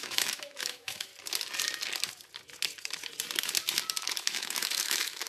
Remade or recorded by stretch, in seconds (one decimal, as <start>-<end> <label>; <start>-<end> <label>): 0.0-1.1 remade; 1.1-4.2 recorded; 4.2-5.3 remade